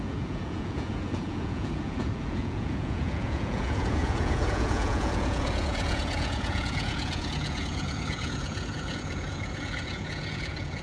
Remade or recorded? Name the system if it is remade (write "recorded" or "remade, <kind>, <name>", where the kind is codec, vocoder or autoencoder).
remade, vocoder, Vocos